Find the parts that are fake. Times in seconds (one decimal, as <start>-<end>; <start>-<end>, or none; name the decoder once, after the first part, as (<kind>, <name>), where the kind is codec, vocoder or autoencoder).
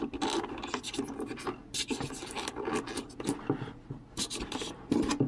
none